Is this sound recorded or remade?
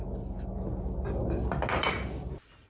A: recorded